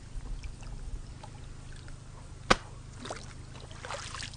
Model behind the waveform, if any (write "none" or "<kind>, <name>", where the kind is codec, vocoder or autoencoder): none